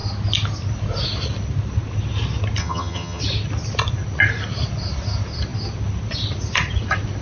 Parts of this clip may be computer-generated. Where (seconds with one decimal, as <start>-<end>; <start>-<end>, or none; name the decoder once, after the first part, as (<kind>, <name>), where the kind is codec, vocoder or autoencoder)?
2.6-3.2 (vocoder, HiFi-GAN)